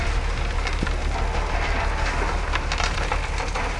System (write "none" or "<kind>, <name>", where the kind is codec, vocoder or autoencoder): none